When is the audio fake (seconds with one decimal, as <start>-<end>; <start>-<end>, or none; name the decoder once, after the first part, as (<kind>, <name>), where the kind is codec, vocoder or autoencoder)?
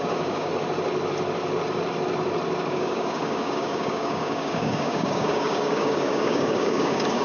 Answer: 0.0-0.5 (codec, DAC); 2.7-7.2